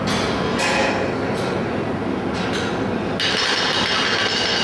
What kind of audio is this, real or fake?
real